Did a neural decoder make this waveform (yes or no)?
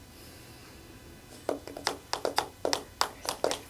no